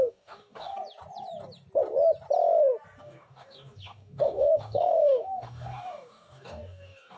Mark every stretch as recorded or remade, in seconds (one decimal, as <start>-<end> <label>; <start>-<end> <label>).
0.0-0.7 remade; 0.7-3.0 recorded; 3.0-7.2 remade